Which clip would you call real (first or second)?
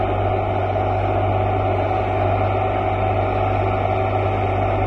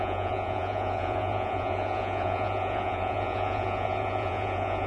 first